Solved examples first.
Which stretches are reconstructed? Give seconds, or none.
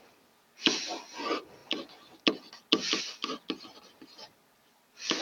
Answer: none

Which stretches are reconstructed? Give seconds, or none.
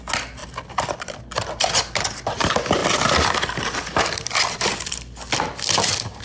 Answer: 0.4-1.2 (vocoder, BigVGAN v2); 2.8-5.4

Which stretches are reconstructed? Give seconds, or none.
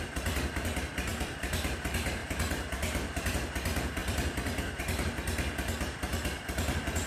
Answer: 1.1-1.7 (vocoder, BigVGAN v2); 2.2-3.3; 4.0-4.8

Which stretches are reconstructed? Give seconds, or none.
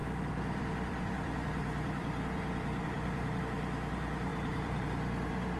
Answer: 0.0-3.4 (vocoder, BigVGAN v2); 4.3-4.8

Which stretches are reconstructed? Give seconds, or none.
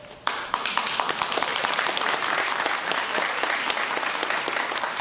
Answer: 0.0-5.0 (vocoder, BigVGAN v2)